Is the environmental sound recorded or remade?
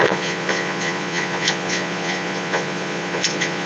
remade